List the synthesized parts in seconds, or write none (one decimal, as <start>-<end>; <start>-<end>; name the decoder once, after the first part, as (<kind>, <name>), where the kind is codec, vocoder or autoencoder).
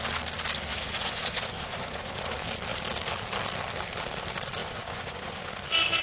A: 0.7-2.3 (vocoder, Vocos); 4.6-5.5